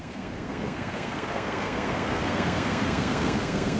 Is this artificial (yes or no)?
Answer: yes